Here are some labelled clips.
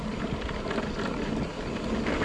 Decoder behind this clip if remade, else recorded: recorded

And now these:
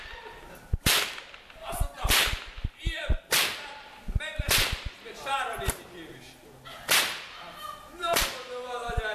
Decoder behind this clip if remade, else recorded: recorded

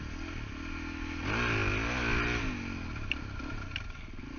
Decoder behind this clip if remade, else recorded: recorded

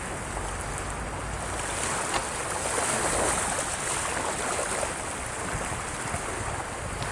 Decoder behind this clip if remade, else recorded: recorded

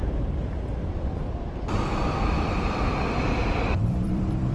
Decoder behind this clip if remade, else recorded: remade, vocoder, BigVGAN v2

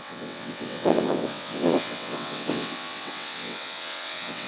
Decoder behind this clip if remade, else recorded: remade, vocoder, WaveNeXt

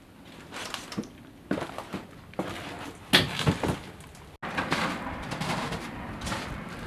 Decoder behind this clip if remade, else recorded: recorded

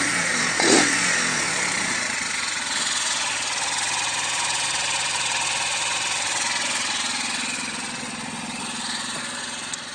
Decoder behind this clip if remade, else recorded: remade, vocoder, Vocos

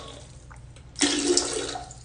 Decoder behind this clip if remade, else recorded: recorded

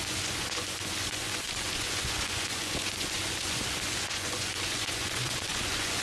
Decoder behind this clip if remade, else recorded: remade, vocoder, Vocos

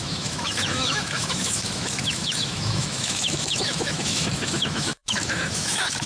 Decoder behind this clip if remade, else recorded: remade, autoencoder, DAC-VAE